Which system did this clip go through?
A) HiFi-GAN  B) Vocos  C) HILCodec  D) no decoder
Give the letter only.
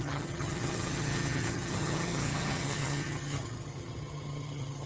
A